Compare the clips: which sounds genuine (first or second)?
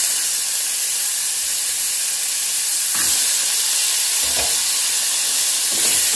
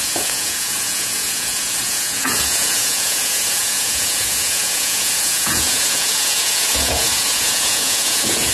first